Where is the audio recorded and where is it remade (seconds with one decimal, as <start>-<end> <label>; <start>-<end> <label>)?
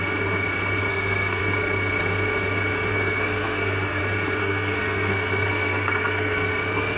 0.0-0.9 recorded; 0.9-1.4 remade; 1.4-2.9 recorded; 2.9-4.0 remade; 4.0-4.4 recorded; 4.4-6.5 remade; 6.5-7.0 recorded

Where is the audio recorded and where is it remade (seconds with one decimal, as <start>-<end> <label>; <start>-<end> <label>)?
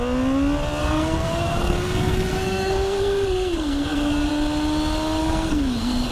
0.0-0.8 recorded; 0.8-4.3 remade; 4.3-5.2 recorded; 5.2-6.1 remade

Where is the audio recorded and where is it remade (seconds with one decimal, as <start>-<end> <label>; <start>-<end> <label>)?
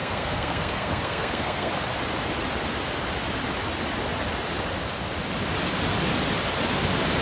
0.0-1.7 remade; 1.7-7.2 recorded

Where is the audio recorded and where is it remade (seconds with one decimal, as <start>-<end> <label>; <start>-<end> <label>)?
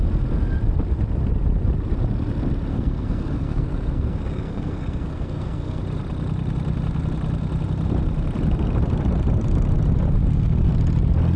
0.0-2.7 recorded; 2.7-5.8 remade; 5.8-10.2 recorded; 10.2-10.7 remade; 10.7-11.4 recorded